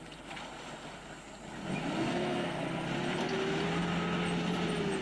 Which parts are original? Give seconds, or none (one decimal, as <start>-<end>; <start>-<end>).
0.0-2.0; 2.6-5.0